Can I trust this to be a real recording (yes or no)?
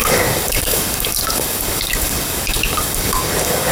no